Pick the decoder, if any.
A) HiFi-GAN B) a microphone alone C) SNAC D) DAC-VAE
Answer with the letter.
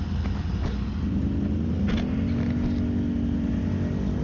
B